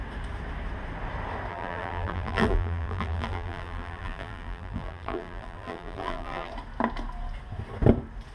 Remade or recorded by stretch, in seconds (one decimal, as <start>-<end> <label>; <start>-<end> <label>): 0.0-1.5 recorded; 1.5-6.5 remade; 6.5-8.3 recorded